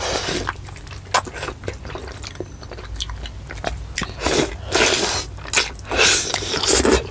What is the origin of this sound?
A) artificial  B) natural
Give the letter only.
B